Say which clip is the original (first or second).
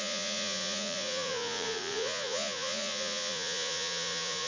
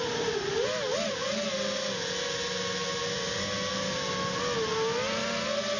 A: second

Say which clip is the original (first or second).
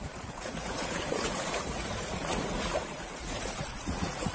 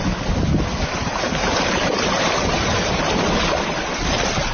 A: second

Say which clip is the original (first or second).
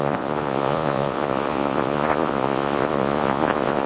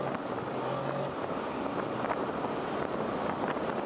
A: second